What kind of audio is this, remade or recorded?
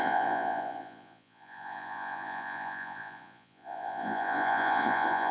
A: remade